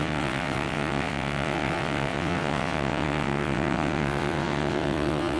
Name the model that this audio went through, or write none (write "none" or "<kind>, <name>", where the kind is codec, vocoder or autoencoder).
vocoder, WaveNeXt